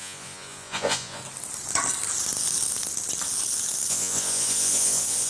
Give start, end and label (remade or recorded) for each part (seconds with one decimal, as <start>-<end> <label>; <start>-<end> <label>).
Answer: 0.0-1.2 remade; 1.2-3.9 recorded; 3.9-5.3 remade